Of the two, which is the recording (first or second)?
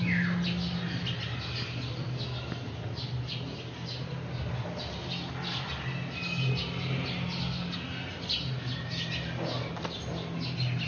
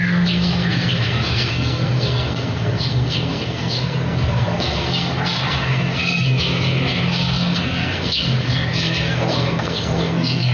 first